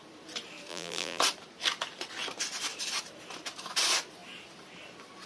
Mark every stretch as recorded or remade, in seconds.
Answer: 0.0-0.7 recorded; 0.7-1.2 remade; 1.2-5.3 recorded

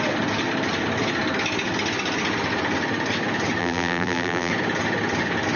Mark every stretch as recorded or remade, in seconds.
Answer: 0.0-3.6 recorded; 3.6-4.5 remade; 4.5-5.6 recorded

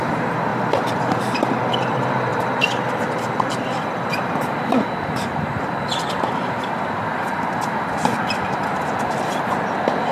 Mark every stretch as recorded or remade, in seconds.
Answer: 0.0-0.5 recorded; 0.5-1.6 remade; 1.6-2.3 recorded; 2.3-6.1 remade; 6.1-10.1 recorded